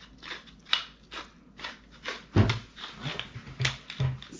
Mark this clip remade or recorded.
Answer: recorded